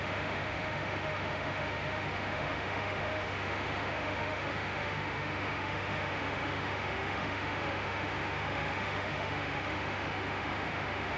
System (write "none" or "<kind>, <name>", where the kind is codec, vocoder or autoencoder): autoencoder, DAC-VAE